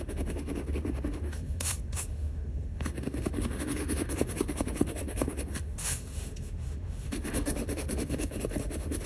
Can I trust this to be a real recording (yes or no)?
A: no